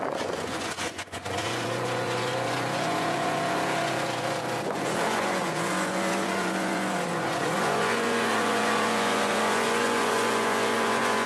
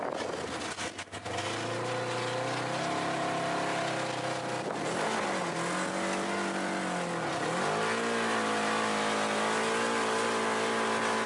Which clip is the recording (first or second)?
second